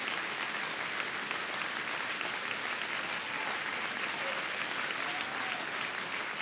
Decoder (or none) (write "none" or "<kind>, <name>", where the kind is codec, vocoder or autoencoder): none